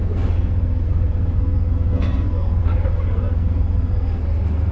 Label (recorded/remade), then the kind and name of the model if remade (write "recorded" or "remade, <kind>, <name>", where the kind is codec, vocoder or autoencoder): remade, codec, SNAC